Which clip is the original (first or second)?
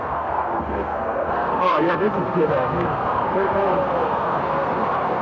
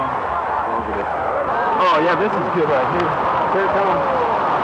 second